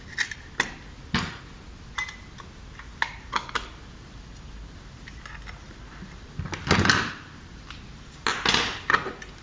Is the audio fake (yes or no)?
no